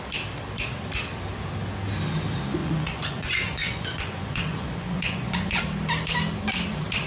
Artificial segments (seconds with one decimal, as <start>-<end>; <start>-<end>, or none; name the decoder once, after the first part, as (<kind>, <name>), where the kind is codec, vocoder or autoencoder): 2.6-5.6 (vocoder, Vocos)